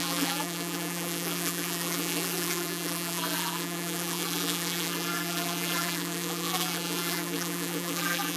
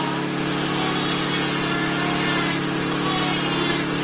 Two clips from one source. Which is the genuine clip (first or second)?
second